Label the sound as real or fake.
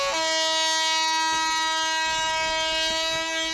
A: real